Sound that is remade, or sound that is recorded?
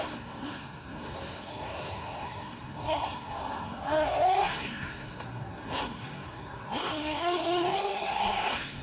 remade